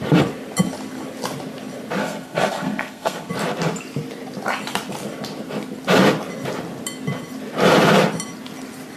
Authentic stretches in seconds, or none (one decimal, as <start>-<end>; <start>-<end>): 0.0-2.0; 3.3-9.0